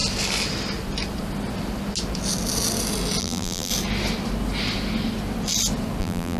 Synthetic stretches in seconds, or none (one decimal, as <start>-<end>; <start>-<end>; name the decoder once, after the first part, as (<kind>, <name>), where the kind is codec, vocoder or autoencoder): 3.2-3.7 (vocoder, BigVGAN v2); 6.0-6.4

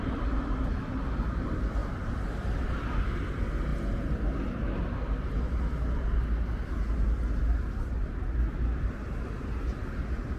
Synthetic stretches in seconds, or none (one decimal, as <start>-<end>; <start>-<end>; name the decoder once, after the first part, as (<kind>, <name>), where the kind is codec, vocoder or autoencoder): none

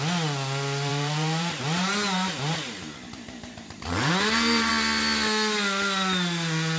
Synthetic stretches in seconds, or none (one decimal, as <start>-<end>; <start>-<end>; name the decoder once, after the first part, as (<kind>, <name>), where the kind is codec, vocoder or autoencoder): 0.9-4.7 (vocoder, BigVGAN v2)

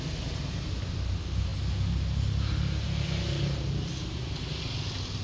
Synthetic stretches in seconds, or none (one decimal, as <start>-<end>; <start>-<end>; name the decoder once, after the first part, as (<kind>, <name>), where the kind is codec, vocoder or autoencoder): none